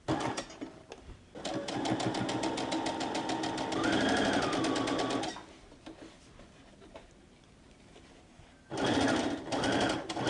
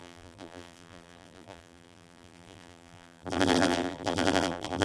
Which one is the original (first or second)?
first